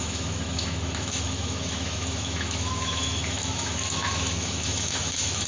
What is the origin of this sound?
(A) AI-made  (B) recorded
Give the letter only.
A